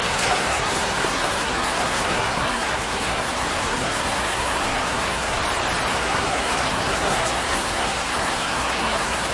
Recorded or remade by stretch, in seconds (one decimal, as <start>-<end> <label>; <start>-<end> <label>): 0.0-5.4 remade; 5.4-5.9 recorded; 5.9-9.3 remade